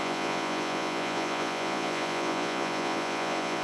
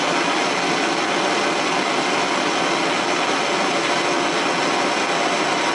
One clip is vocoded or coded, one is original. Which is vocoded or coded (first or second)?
first